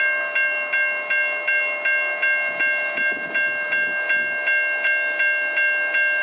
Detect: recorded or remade recorded